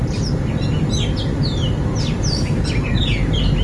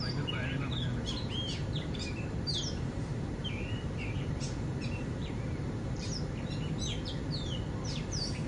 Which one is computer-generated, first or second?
second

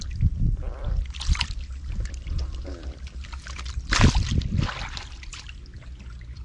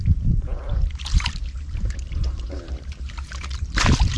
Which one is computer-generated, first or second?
second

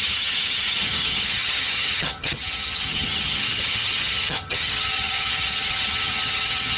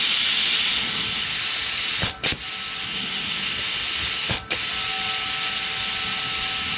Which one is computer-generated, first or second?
first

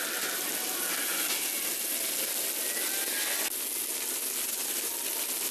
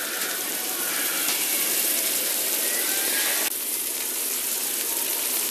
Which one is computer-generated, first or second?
second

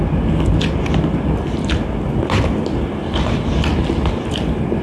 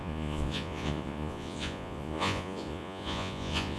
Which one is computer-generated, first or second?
second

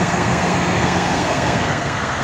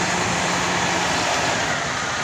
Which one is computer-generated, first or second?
first